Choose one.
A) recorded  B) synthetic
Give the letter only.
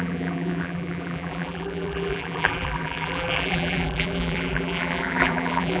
B